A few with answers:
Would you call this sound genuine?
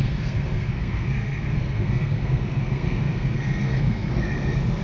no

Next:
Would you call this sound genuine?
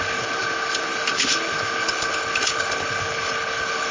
no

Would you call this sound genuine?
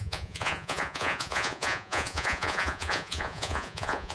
no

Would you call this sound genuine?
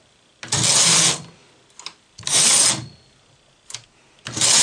yes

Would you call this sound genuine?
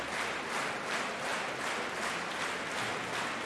yes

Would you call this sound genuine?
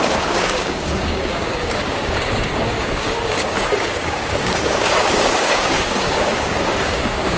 no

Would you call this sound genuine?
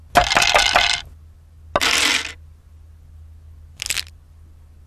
yes